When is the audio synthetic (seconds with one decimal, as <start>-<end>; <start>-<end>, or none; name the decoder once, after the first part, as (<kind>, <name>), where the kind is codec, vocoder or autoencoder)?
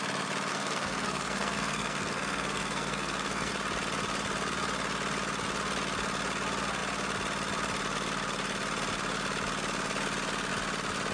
0.5-3.5 (codec, SNAC)